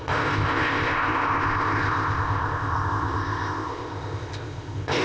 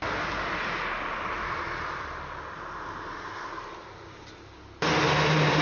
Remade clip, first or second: first